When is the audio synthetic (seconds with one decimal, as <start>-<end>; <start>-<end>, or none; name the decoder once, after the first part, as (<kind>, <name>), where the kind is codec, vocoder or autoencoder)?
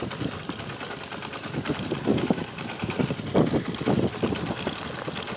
2.1-3.0 (codec, DAC)